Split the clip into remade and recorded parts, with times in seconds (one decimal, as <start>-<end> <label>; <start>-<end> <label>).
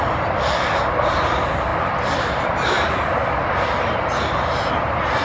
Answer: 0.0-5.2 recorded